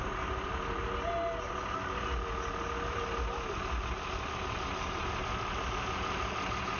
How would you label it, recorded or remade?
recorded